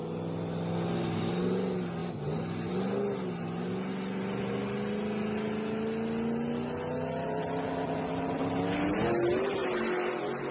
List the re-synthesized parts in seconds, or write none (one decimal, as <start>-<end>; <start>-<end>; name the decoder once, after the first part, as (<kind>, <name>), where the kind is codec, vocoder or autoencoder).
none